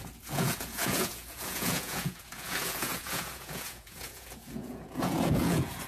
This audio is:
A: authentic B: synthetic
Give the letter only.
B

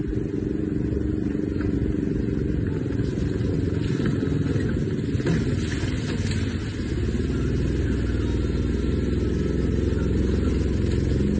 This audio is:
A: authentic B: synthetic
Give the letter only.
A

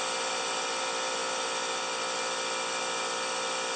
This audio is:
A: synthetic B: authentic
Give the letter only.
B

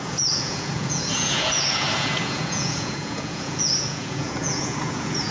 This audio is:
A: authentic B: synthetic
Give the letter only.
B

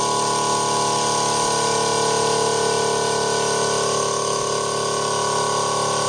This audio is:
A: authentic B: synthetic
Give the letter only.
A